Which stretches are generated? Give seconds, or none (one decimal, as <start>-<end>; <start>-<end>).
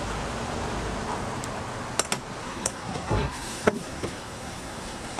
2.4-5.2